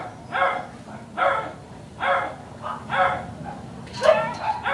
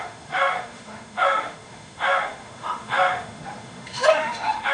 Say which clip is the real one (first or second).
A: first